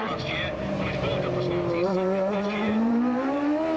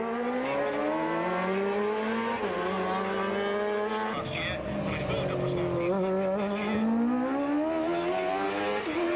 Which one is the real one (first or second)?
second